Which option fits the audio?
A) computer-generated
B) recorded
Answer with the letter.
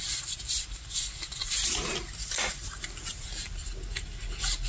B